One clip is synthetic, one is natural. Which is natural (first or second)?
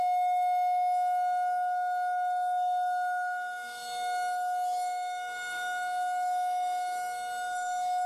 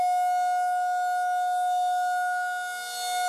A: second